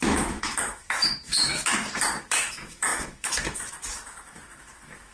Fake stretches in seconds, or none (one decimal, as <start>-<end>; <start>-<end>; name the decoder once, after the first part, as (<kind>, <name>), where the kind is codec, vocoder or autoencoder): 0.0-1.7 (autoencoder, DAC-VAE); 2.2-5.1